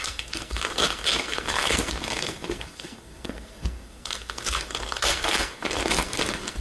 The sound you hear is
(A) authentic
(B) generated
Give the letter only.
B